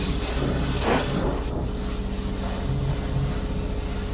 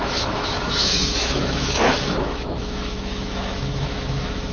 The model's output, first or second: second